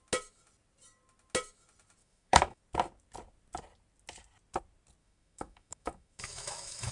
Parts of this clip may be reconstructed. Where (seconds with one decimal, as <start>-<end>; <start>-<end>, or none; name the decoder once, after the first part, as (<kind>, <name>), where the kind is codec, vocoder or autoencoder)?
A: 2.0-2.6 (autoencoder, DAC-VAE); 5.0-6.9